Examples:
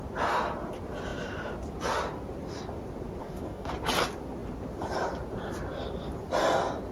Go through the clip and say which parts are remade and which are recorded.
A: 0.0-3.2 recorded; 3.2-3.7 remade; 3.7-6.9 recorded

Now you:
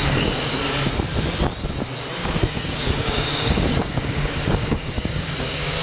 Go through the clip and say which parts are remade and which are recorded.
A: 0.0-0.9 remade; 0.9-2.2 recorded; 2.2-5.8 remade

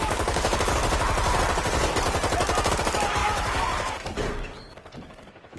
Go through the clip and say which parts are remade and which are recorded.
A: 0.0-0.8 remade; 0.8-2.7 recorded; 2.7-5.6 remade

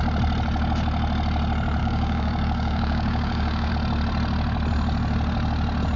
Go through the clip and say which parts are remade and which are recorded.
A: 0.0-1.8 recorded; 1.8-3.7 remade; 3.7-6.0 recorded